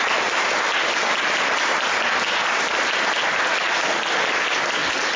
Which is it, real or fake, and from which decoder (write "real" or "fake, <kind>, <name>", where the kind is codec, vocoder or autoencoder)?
real